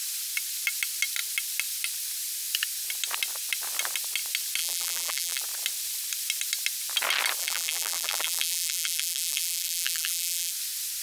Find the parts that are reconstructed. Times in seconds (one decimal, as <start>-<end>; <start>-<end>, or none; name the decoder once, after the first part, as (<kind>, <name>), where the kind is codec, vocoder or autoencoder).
4.6-5.4 (vocoder, BigVGAN v2); 7.4-10.5